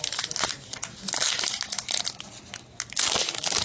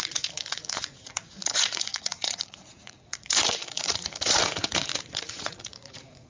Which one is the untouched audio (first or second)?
first